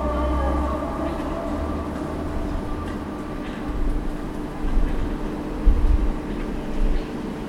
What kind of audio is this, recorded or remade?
recorded